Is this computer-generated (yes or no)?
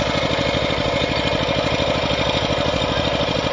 no